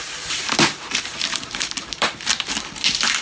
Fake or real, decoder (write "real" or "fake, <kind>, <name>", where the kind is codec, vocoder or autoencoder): fake, vocoder, BigVGAN v2